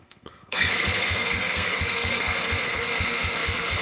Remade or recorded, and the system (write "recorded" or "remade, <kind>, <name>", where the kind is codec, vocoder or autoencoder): remade, codec, SNAC